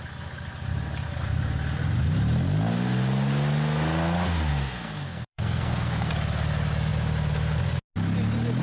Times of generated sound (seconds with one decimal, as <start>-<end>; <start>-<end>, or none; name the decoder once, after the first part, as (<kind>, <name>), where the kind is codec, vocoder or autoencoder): 4.5-6.1 (codec, SNAC)